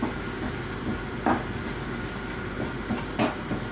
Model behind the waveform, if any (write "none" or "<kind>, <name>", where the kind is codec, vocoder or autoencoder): none